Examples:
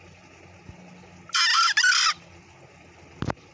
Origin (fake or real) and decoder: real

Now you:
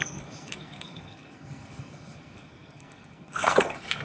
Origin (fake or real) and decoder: fake, codec, SNAC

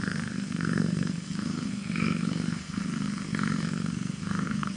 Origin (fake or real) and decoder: fake, codec, SNAC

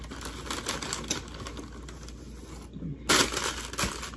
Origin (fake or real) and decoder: real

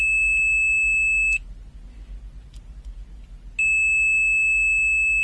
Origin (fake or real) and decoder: real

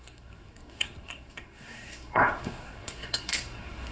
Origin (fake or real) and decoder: fake, codec, SNAC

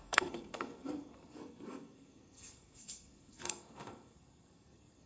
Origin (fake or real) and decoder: fake, codec, SNAC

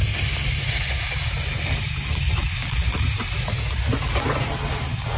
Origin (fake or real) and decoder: real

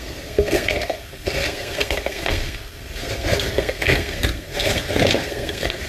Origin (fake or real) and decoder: fake, codec, SNAC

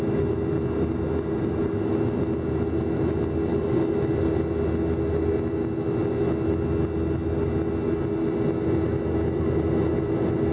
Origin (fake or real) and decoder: real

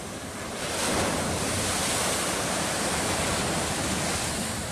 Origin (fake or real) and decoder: real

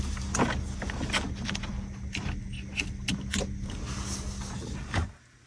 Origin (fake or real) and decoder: real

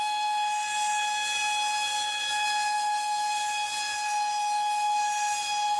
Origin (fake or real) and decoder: real